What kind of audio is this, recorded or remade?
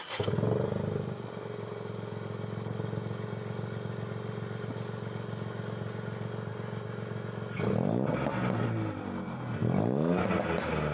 recorded